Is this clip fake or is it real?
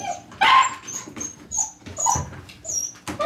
real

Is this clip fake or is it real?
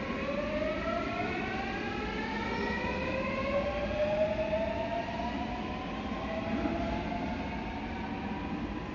real